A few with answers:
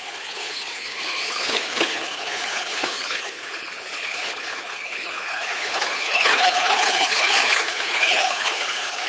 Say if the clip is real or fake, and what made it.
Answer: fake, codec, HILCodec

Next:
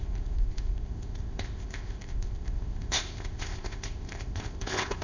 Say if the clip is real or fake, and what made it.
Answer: fake, codec, ZipCodec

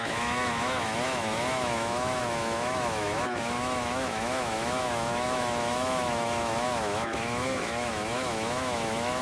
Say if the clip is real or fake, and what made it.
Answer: fake, autoencoder, DAC-VAE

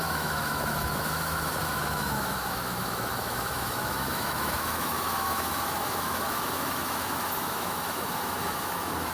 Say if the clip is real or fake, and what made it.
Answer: fake, autoencoder, DAC-VAE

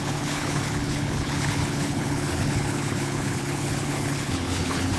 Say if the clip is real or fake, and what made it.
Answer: fake, codec, HILCodec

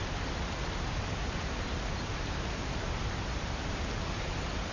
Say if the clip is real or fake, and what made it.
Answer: real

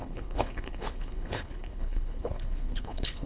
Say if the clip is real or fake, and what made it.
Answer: fake, codec, HILCodec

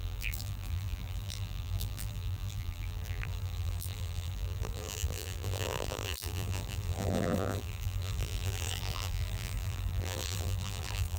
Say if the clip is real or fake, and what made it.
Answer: fake, vocoder, BigVGAN v2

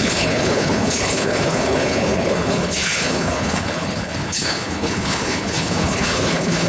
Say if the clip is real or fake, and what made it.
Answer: fake, codec, HILCodec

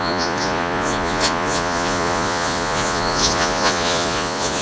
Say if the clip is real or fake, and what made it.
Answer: fake, vocoder, Vocos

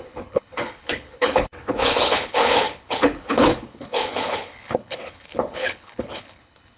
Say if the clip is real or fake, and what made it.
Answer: fake, codec, HILCodec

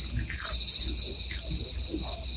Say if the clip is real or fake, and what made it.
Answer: real